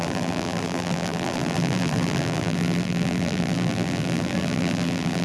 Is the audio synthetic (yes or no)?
yes